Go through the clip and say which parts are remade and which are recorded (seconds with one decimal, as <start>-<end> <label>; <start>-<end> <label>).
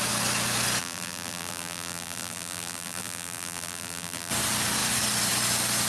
0.0-0.8 recorded; 0.8-4.3 remade; 4.3-5.9 recorded